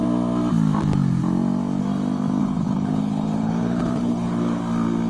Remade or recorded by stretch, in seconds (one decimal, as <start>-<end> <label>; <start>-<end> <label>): 0.0-2.4 recorded; 2.4-4.6 remade; 4.6-5.1 recorded